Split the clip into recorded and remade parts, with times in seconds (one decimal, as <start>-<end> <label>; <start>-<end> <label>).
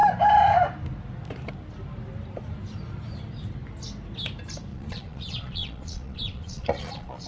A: 0.0-4.7 recorded; 4.7-7.3 remade